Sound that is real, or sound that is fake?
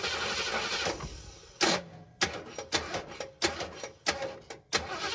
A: real